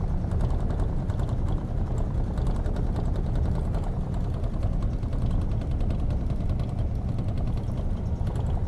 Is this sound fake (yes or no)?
no